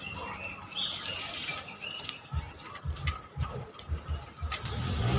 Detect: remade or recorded recorded